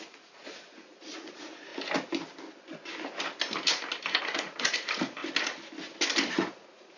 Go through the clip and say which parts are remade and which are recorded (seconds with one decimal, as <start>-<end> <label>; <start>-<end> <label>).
0.0-1.7 remade; 1.7-4.2 recorded; 4.2-5.2 remade; 5.2-6.3 recorded; 6.3-7.0 remade